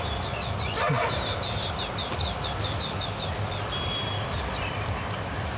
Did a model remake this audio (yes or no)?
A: no